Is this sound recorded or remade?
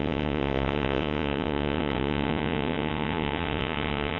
remade